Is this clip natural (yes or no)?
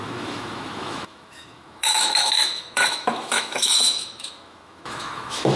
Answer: no